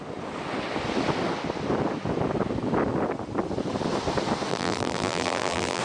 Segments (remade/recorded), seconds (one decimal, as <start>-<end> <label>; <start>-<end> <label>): 0.0-4.5 recorded; 4.5-5.8 remade